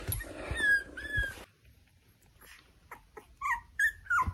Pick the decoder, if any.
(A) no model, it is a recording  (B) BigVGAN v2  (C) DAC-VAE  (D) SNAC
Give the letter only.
A